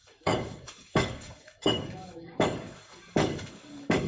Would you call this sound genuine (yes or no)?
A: no